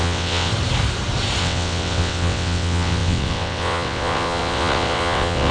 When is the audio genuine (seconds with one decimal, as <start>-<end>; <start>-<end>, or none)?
0.5-1.4